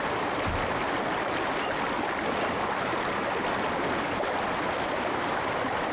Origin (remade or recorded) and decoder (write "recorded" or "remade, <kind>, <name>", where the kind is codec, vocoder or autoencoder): recorded